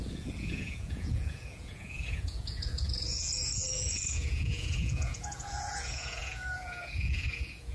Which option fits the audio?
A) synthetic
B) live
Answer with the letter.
A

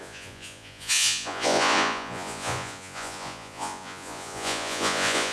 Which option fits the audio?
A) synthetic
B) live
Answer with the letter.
A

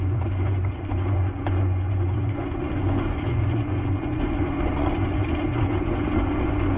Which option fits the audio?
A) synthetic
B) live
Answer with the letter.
A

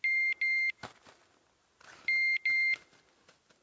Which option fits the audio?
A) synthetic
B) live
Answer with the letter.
B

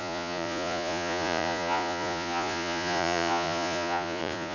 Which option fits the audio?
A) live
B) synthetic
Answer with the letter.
B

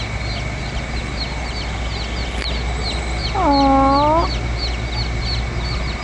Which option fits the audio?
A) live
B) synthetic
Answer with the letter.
A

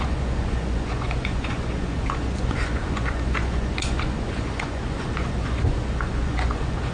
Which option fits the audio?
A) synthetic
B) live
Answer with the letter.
A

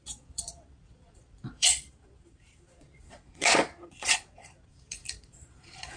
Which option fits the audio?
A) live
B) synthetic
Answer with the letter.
B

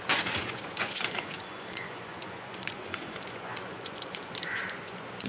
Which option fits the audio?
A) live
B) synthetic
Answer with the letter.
B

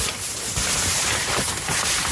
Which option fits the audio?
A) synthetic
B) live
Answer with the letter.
B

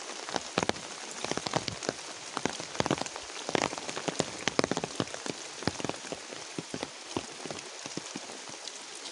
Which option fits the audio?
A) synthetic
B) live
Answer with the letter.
B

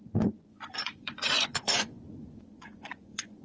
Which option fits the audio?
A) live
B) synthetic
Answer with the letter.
B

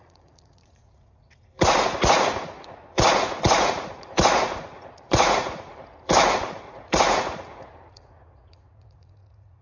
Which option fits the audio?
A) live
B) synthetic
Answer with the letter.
B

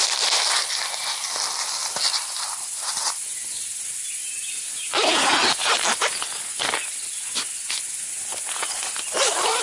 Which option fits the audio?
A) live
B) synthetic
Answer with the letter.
A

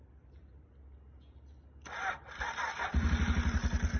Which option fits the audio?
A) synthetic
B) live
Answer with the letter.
B